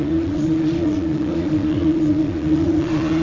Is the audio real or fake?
fake